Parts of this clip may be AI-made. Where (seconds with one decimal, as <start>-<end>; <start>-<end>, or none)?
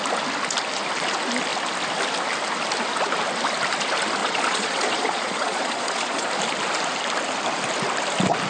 4.2-6.3